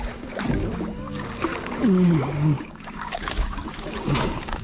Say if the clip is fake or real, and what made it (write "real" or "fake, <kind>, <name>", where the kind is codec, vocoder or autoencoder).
fake, codec, DAC